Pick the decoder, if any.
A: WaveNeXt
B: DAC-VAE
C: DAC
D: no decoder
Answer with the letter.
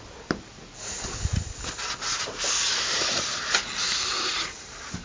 D